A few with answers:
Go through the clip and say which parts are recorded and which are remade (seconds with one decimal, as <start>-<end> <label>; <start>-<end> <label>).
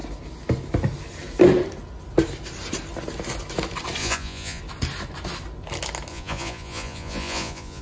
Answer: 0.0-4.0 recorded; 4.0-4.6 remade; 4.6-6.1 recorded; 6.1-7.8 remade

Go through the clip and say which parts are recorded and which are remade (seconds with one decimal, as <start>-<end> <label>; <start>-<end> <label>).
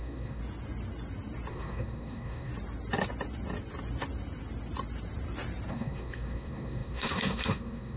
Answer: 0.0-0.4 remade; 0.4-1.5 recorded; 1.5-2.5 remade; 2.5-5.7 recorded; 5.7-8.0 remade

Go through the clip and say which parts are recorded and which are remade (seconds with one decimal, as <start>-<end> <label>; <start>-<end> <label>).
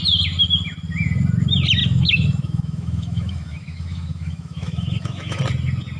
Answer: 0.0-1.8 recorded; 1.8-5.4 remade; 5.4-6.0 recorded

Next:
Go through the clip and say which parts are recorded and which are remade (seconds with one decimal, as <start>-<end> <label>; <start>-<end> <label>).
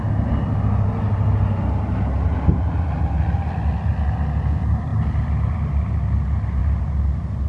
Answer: 0.0-7.5 recorded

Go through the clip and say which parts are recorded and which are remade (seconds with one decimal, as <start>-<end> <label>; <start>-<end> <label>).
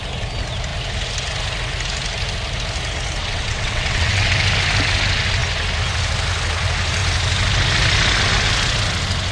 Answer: 0.0-3.2 recorded; 3.2-4.3 remade; 4.3-9.3 recorded